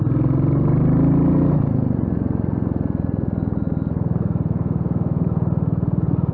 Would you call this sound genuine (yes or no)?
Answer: yes